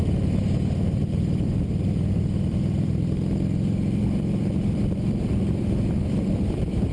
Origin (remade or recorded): remade